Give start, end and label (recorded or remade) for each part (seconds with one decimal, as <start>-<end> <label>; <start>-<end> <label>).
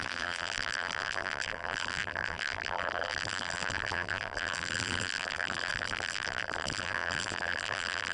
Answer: 0.0-8.1 remade